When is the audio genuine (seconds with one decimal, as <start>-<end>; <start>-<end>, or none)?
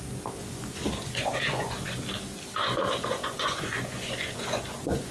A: 0.0-0.4; 2.0-2.6